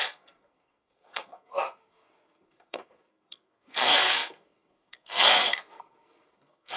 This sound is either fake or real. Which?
fake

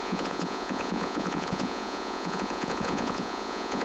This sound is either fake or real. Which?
fake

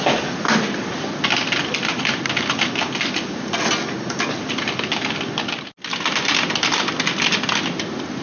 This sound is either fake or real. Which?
real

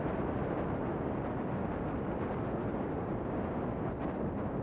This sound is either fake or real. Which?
real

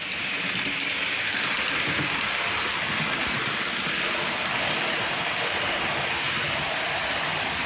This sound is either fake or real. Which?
real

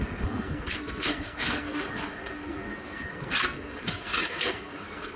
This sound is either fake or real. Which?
fake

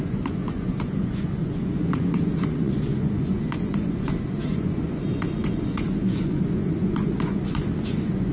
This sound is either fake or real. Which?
fake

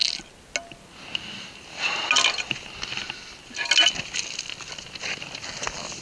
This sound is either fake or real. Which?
real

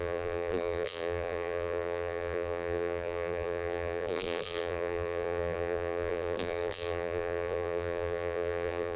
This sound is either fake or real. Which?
fake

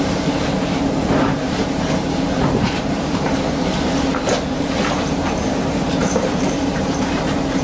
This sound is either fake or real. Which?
fake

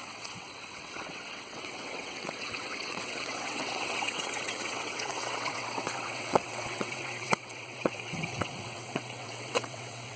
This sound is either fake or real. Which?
fake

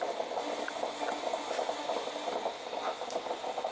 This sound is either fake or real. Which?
real